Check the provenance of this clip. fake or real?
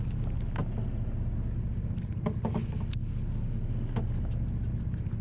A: real